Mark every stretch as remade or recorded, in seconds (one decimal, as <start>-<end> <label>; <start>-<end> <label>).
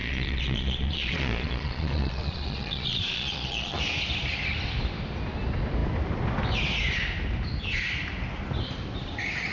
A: 0.0-3.8 remade; 3.8-9.5 recorded